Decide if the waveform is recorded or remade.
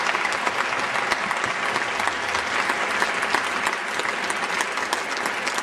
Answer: recorded